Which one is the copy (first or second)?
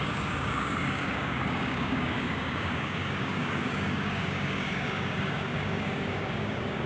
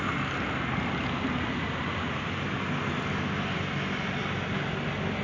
first